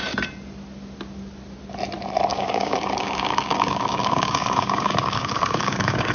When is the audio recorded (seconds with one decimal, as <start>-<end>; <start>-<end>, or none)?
0.0-2.3